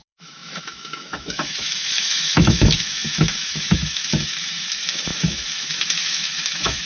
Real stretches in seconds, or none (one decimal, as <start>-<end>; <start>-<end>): none